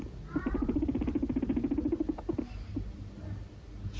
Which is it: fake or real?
real